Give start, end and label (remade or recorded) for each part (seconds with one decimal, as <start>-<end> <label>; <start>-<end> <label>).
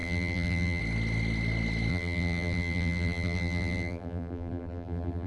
0.0-0.8 remade; 0.8-1.9 recorded; 1.9-5.3 remade